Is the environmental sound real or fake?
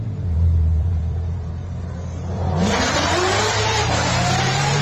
fake